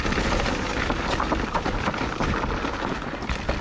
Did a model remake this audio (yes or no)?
no